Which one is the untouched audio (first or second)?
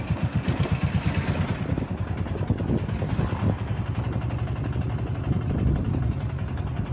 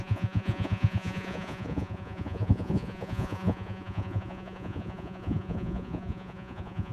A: first